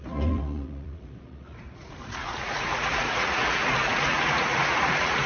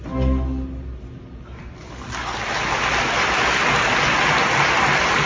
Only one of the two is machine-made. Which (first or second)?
first